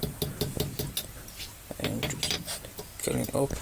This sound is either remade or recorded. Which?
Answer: recorded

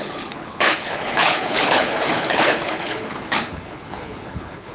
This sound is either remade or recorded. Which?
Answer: remade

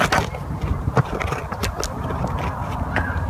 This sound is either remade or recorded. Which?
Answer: recorded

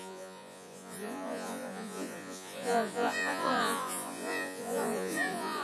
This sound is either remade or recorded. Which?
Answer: remade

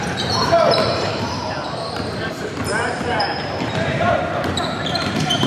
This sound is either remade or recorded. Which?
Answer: remade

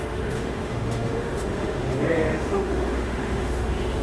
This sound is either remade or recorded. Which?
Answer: remade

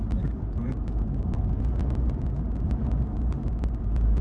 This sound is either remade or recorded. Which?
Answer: recorded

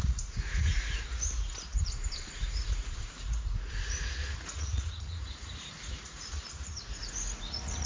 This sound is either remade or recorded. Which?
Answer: remade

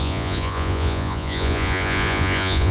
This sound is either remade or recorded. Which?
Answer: remade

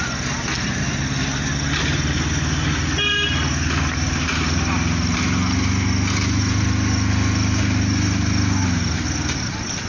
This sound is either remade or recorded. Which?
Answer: recorded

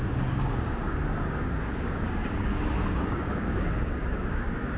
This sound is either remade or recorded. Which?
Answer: remade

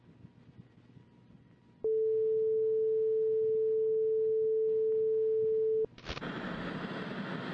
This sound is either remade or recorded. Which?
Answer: recorded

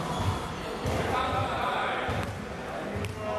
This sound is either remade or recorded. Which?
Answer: recorded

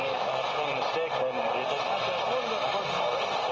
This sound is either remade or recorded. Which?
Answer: recorded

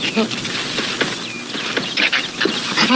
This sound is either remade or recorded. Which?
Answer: recorded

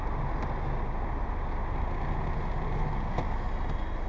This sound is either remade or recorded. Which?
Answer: recorded